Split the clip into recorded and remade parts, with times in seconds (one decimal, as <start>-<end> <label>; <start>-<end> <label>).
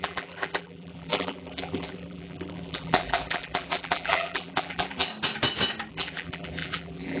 0.0-5.1 remade; 5.1-5.9 recorded; 5.9-7.2 remade